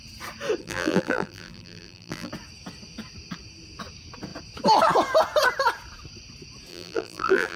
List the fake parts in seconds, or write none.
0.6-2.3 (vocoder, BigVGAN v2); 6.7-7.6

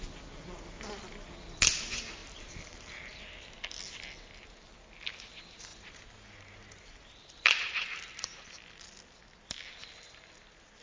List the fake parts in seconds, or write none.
2.2-3.5 (vocoder, BigVGAN v2); 5.7-8.0

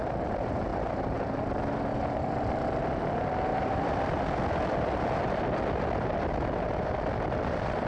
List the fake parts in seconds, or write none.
0.7-1.5 (vocoder, BigVGAN v2); 1.9-2.5; 3.5-5.4